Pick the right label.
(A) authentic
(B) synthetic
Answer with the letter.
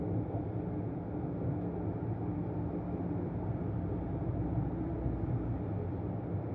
A